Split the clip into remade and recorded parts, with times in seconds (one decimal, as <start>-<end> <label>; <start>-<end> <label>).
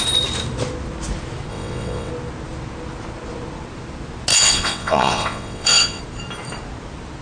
0.0-1.5 recorded; 1.5-2.1 remade; 2.1-4.3 recorded; 4.3-6.0 remade; 6.0-7.2 recorded